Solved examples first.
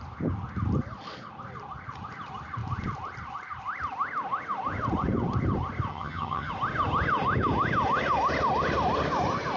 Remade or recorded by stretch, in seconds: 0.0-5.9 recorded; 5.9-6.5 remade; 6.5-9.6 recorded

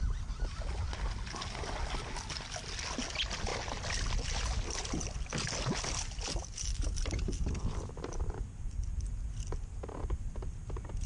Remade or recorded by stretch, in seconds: 0.0-11.1 recorded

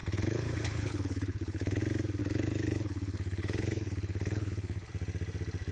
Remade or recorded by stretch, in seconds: 0.0-1.8 remade; 1.8-2.2 recorded; 2.2-4.9 remade; 4.9-5.7 recorded

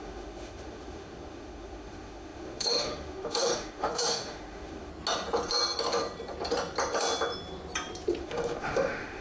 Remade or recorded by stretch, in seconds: 0.0-4.9 remade; 4.9-8.2 recorded; 8.2-9.2 remade

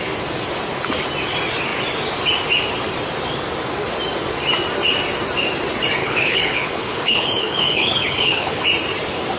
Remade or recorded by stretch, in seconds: 0.0-6.0 recorded; 6.0-8.6 remade; 8.6-9.4 recorded

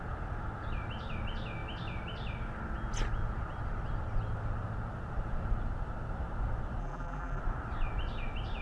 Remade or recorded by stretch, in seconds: 0.0-6.8 recorded; 6.8-7.4 remade; 7.4-8.6 recorded

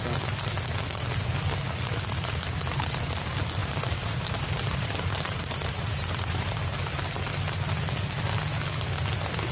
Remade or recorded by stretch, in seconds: 0.0-3.6 recorded; 3.6-6.5 remade; 6.5-9.5 recorded

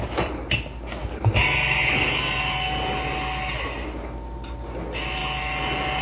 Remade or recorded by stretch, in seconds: 0.0-6.0 recorded